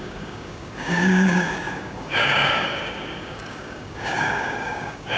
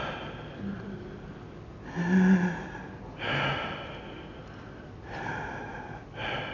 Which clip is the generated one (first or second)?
first